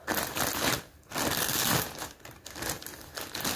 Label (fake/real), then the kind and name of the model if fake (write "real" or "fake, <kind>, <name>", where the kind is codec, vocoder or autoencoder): real